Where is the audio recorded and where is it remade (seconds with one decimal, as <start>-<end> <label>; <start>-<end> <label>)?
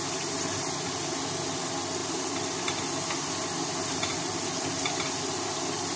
0.0-6.0 remade